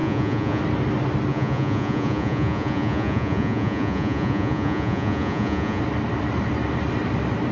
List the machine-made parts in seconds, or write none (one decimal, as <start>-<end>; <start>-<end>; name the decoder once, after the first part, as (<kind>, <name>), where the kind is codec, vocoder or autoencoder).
0.0-0.6 (vocoder, Vocos); 1.3-5.8